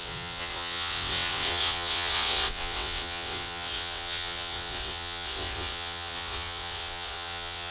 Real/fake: fake